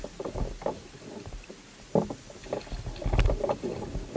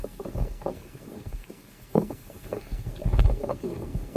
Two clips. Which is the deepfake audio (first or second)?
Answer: second